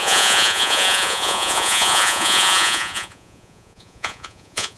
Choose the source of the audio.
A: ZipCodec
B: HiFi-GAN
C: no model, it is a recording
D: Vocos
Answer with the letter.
D